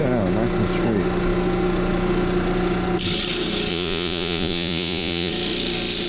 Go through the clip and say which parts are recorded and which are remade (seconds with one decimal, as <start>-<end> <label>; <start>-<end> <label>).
0.0-3.7 recorded; 3.7-5.3 remade; 5.3-6.1 recorded